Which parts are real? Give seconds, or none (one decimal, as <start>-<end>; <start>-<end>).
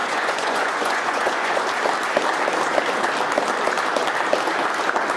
1.6-5.2